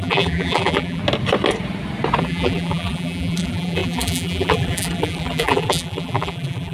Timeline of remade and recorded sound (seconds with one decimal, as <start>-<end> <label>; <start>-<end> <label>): 0.0-1.0 remade; 1.0-2.2 recorded; 2.2-6.7 remade